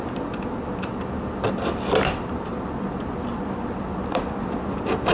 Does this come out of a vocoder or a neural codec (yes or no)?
no